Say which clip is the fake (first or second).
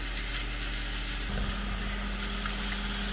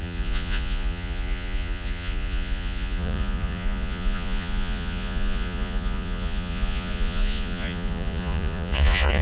second